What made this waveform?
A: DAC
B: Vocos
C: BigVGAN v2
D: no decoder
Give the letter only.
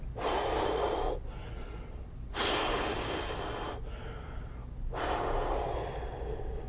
D